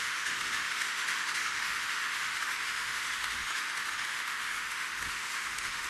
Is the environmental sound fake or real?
fake